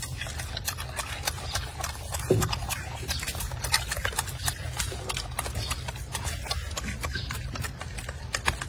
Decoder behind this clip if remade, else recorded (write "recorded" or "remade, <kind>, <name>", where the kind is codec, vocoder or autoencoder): recorded